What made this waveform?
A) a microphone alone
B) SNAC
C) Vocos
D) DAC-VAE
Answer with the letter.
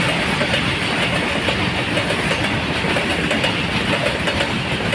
A